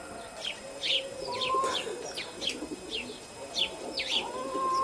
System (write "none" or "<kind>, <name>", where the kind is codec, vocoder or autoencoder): none